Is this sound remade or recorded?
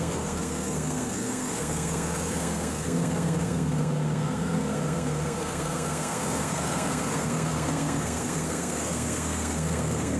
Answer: remade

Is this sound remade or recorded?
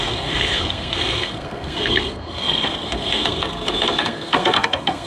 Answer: remade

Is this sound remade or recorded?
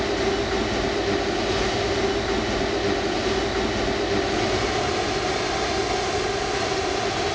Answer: recorded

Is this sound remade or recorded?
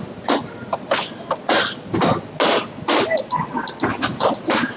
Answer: recorded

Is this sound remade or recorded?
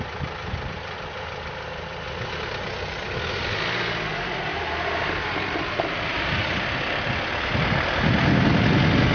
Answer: recorded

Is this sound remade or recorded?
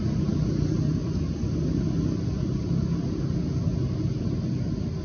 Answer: recorded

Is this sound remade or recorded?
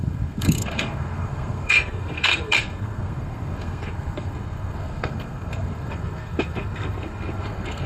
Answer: remade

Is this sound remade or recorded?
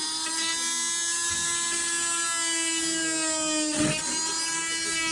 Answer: recorded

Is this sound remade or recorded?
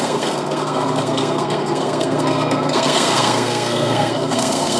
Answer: remade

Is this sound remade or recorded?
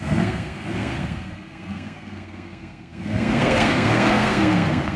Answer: remade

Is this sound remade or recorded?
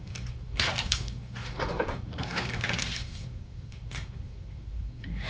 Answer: remade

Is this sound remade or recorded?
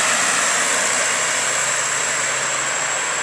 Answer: recorded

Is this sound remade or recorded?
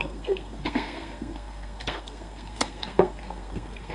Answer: remade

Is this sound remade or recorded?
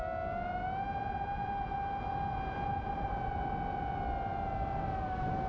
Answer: recorded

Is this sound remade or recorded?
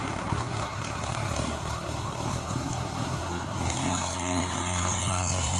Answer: remade